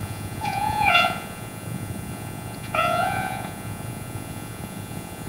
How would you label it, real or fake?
fake